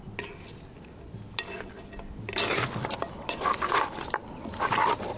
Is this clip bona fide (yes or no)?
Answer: yes